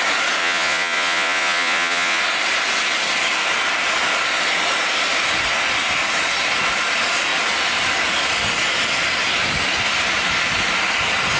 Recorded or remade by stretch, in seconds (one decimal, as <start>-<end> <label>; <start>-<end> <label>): 0.0-0.4 recorded; 0.4-2.2 remade; 2.2-11.4 recorded